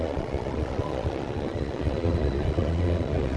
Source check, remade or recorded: remade